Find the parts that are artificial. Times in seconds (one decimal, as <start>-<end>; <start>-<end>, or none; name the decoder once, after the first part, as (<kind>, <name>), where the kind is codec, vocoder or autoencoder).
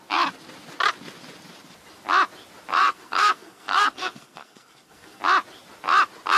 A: 2.8-5.2 (codec, SNAC)